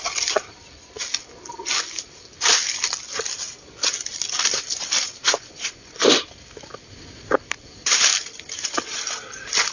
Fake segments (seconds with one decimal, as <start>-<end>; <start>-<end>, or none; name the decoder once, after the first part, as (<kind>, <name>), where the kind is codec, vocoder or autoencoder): 5.2-6.1 (vocoder, Vocos)